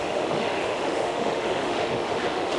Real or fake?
fake